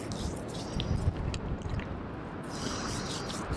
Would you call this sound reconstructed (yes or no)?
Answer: no